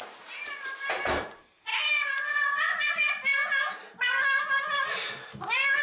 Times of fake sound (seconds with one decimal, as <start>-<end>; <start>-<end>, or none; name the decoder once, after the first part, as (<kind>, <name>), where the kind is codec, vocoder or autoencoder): 0.0-1.7 (vocoder, BigVGAN v2); 2.9-3.4; 4.8-5.8